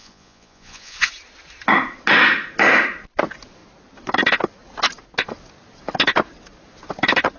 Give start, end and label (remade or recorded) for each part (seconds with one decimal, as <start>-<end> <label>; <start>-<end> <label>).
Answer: 0.0-1.1 remade; 1.1-7.4 recorded